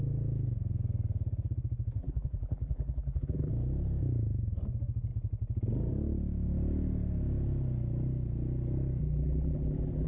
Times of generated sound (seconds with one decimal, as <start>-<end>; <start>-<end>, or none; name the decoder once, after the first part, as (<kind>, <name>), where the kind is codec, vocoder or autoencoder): 2.0-3.5 (vocoder, BigVGAN v2); 9.0-10.1